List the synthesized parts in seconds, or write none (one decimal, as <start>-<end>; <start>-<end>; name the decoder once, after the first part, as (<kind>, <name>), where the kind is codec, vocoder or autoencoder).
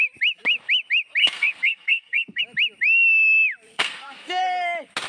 1.2-2.4 (codec, SNAC); 3.7-4.4